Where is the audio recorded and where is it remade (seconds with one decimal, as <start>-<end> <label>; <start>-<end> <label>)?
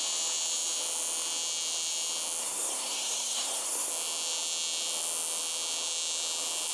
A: 0.0-2.4 recorded; 2.4-3.9 remade; 3.9-6.7 recorded